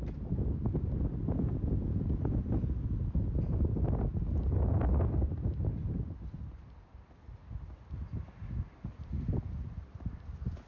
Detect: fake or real real